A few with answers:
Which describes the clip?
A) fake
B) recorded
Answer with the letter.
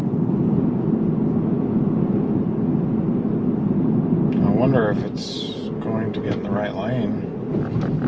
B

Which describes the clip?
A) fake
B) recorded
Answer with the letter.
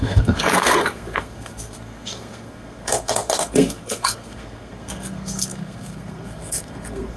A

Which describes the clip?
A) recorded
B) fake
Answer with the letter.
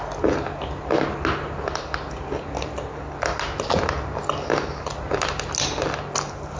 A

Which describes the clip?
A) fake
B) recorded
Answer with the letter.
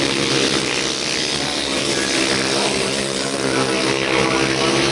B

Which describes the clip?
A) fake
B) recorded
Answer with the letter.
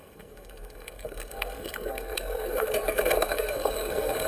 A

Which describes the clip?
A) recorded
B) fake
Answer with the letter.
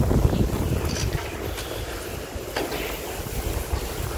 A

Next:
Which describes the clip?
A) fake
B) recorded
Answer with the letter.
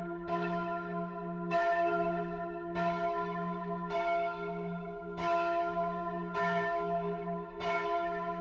A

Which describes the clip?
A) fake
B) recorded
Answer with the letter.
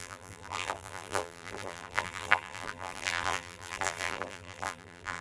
A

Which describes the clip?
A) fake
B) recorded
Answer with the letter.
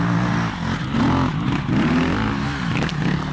B